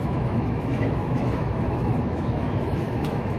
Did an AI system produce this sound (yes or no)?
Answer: yes